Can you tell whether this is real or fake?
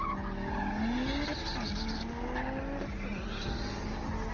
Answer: real